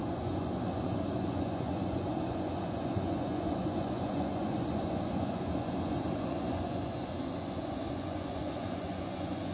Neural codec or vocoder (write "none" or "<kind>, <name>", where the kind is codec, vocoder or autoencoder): vocoder, Vocos